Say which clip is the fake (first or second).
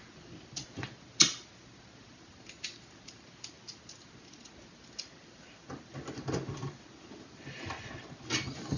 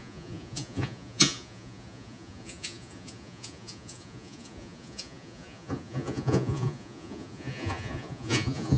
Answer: second